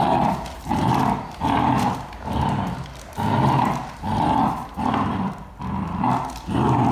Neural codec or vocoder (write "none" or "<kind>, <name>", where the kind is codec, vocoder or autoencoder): vocoder, BigVGAN v2